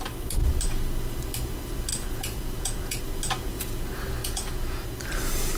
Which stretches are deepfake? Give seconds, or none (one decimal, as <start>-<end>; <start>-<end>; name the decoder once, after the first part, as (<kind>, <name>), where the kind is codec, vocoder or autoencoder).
1.9-3.0 (vocoder, Vocos); 4.2-5.0